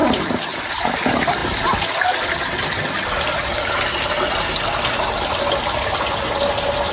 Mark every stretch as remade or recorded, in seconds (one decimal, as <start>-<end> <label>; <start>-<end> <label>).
0.0-6.9 recorded